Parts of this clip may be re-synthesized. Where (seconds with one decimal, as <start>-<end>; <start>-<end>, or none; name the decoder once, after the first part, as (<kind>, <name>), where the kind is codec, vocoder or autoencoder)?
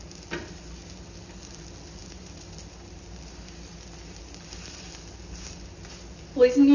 none